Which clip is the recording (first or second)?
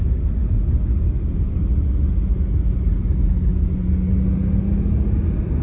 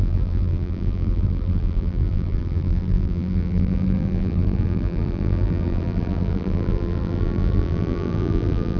first